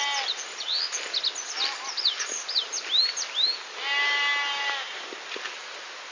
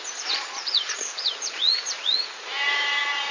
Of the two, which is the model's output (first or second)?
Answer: second